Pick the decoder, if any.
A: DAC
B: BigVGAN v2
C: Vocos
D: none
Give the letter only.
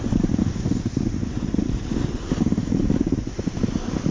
D